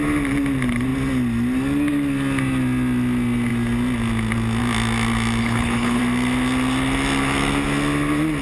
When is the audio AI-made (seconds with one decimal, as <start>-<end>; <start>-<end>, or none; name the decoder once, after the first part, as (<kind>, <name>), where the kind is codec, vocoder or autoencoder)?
5.4-6.0 (codec, HILCodec)